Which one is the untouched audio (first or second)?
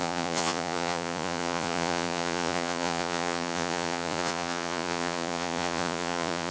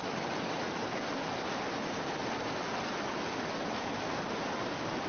second